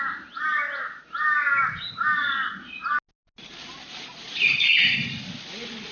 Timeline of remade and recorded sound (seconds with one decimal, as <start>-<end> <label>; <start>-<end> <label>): 0.0-5.9 recorded

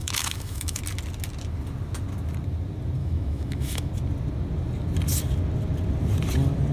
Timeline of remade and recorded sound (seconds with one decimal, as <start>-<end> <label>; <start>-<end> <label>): 0.0-0.8 remade; 0.8-3.0 recorded; 3.0-3.9 remade; 3.9-6.7 recorded

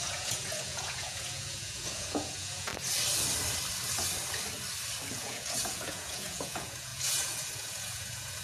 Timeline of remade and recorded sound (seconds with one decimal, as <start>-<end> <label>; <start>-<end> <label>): 0.0-2.7 remade; 2.7-5.1 recorded; 5.1-8.4 remade

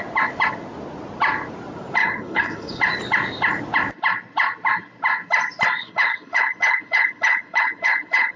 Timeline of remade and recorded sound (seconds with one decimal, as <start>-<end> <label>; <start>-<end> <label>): 0.0-2.0 recorded; 2.0-2.8 remade; 2.8-5.8 recorded; 5.8-8.4 remade